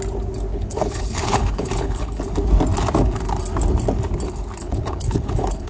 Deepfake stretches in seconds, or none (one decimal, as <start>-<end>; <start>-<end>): 0.5-2.2; 4.6-5.7